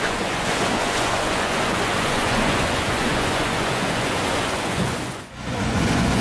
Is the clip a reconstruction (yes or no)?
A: yes